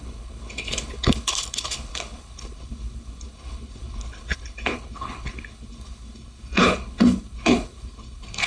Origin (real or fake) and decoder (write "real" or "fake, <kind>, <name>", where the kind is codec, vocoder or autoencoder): fake, codec, HILCodec